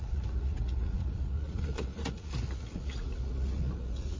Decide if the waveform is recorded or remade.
remade